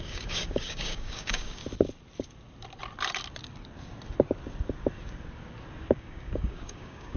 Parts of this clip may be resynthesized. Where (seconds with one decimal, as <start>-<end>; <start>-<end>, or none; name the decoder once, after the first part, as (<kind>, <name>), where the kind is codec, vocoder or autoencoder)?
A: 0.0-1.6 (codec, DAC); 5.9-7.2